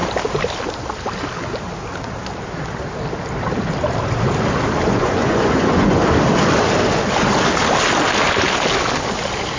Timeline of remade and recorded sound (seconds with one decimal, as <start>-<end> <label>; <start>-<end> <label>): 0.0-4.9 recorded; 4.9-6.0 remade; 6.0-9.6 recorded